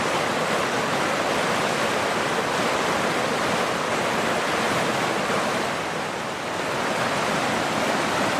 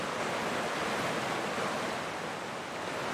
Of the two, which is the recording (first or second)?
second